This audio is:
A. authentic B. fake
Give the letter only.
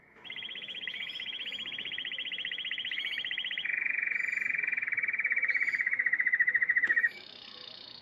B